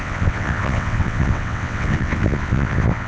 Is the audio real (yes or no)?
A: no